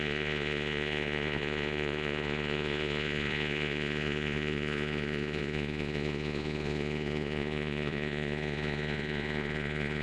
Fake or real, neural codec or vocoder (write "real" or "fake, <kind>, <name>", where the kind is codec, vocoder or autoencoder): fake, vocoder, Vocos